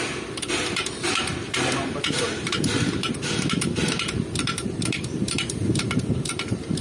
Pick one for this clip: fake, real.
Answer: fake